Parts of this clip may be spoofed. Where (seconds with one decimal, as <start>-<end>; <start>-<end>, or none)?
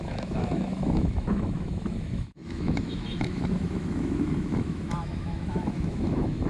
0.0-6.5